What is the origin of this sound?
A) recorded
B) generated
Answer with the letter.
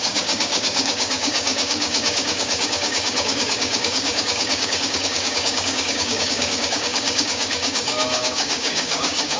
B